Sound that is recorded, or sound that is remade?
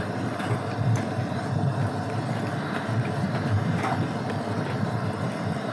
recorded